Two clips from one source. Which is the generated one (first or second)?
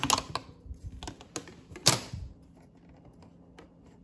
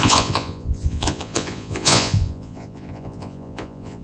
second